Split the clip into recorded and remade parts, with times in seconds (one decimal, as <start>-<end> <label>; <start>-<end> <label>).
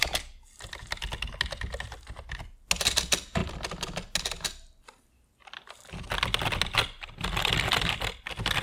0.0-8.6 recorded